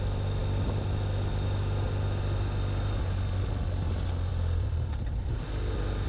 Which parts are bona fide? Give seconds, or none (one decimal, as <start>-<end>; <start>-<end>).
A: 0.0-4.3; 5.5-6.1

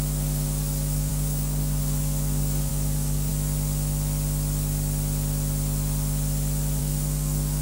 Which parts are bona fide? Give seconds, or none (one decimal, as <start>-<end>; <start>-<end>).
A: 3.3-6.8

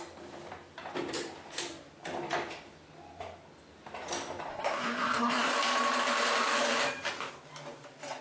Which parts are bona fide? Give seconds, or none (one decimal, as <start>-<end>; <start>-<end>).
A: 0.0-4.5; 5.5-8.2

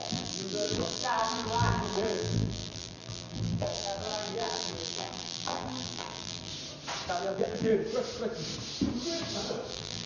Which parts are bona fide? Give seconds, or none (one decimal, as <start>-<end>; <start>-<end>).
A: 6.5-7.1; 7.7-9.7

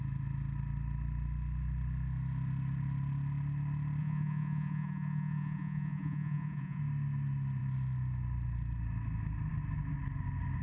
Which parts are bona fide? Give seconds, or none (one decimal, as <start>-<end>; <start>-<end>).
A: 0.0-4.0; 6.8-10.6

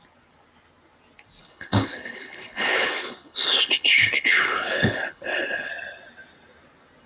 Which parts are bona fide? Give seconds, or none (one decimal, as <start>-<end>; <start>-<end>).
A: 0.0-1.4; 5.7-7.1

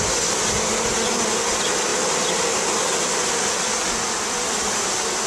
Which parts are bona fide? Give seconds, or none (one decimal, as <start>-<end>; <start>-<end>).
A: 0.0-5.3

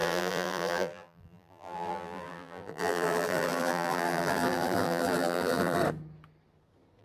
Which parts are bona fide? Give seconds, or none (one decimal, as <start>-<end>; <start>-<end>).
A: 5.8-7.0